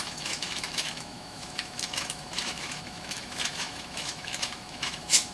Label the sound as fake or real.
fake